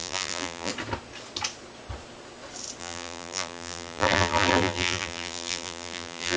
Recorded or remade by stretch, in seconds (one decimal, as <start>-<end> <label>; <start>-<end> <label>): 0.0-0.7 remade; 0.7-2.8 recorded; 2.8-6.4 remade